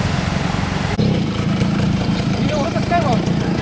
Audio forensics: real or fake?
fake